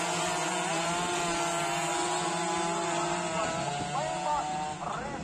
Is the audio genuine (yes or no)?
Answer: yes